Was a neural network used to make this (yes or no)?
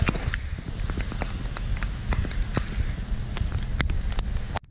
no